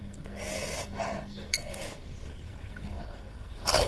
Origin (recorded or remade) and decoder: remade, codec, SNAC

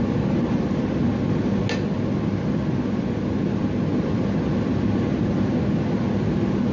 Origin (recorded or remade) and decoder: recorded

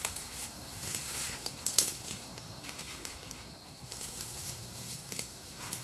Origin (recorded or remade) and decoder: remade, codec, SNAC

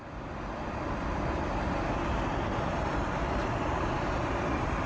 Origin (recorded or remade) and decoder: recorded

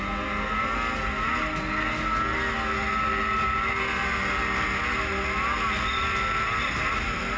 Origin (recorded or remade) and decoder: recorded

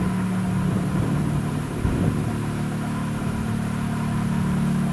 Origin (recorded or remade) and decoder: recorded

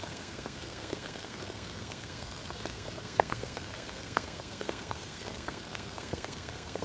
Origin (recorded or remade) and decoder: remade, codec, SNAC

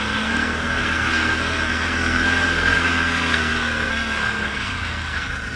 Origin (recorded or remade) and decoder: remade, codec, SNAC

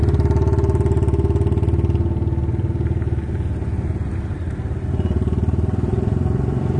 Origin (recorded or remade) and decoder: recorded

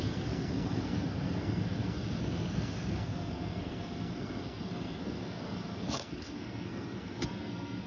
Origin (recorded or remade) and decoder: remade, codec, SNAC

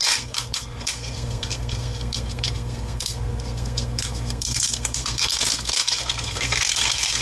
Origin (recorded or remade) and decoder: remade, codec, SNAC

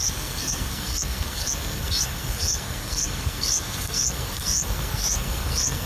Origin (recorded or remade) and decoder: remade, codec, SNAC